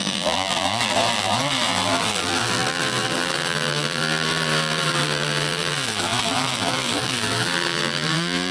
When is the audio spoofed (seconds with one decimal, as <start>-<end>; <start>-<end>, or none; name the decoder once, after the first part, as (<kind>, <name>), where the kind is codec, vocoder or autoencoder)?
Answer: 0.0-8.5 (vocoder, BigVGAN v2)